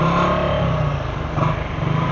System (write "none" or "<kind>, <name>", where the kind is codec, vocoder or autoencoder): none